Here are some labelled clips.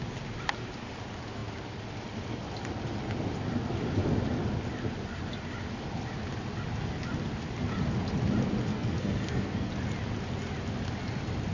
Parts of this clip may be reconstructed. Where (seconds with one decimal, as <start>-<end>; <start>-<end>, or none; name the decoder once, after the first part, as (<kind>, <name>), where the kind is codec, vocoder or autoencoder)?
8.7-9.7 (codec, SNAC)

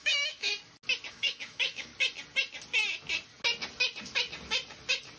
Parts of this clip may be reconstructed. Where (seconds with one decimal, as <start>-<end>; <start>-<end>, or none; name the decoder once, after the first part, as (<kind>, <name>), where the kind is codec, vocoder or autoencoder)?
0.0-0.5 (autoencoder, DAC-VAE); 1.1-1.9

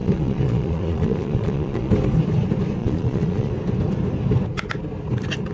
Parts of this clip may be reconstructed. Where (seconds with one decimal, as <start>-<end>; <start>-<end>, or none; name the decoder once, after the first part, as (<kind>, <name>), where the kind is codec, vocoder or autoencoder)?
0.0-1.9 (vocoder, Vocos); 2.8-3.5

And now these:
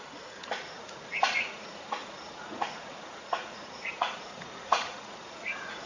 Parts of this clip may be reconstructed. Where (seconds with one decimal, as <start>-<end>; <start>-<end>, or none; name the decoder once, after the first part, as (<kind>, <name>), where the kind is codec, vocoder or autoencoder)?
0.0-5.9 (vocoder, Vocos)

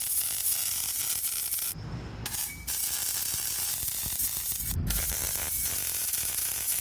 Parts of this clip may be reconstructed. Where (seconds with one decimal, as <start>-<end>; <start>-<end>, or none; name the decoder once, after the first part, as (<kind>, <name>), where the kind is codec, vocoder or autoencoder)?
none